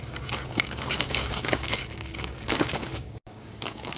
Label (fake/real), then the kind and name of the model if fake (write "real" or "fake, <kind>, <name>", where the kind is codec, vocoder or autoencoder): fake, codec, DAC